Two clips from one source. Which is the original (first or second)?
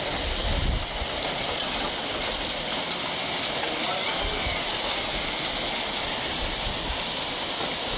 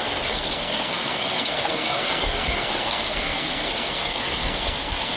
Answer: first